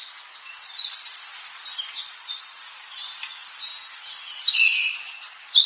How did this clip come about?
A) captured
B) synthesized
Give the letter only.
A